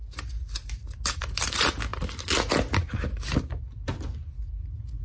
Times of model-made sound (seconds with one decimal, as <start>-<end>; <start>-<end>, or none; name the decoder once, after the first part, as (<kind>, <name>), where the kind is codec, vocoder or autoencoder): none